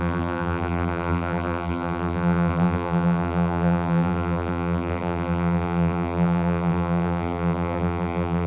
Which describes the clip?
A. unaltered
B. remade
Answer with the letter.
B